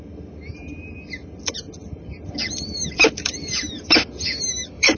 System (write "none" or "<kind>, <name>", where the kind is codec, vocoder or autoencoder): vocoder, BigVGAN v2